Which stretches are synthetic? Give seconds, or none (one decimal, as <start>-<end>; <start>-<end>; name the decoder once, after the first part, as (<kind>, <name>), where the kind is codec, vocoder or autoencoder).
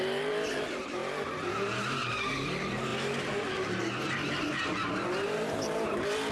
0.0-1.0 (vocoder, BigVGAN v2); 1.5-2.9; 4.0-6.3